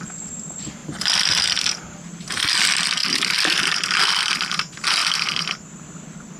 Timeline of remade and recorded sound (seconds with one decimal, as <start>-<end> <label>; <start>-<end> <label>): 0.0-3.0 recorded; 3.0-4.3 remade; 4.3-5.0 recorded; 5.0-6.4 remade